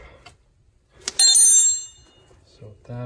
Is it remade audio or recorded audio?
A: recorded